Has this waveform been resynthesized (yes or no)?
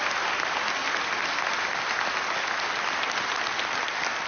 no